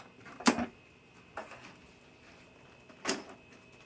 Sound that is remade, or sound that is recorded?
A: recorded